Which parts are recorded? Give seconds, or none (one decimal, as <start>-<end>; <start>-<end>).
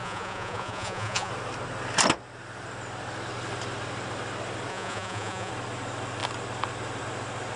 1.3-4.7; 5.5-7.6